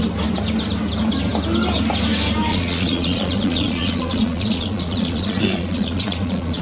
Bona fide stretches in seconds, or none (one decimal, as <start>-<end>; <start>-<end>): 0.0-2.5